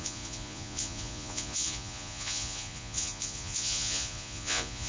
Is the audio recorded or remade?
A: remade